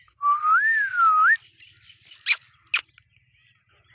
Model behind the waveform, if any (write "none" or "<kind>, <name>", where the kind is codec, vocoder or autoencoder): none